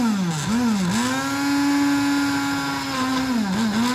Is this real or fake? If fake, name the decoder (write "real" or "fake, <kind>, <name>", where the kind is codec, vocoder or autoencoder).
real